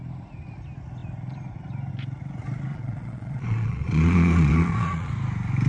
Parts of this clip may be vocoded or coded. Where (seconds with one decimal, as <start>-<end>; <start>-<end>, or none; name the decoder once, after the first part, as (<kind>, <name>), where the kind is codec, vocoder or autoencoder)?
2.7-5.1 (vocoder, Vocos)